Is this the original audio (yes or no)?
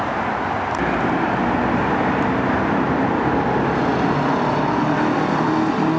yes